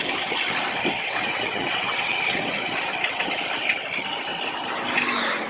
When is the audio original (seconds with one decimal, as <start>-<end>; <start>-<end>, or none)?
0.0-0.9; 2.2-5.5